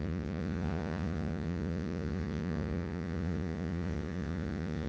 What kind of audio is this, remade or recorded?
remade